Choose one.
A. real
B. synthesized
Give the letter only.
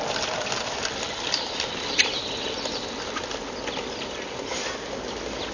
A